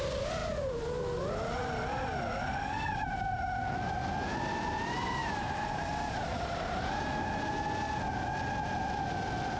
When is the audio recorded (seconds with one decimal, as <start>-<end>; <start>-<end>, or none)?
0.0-5.2; 7.1-9.6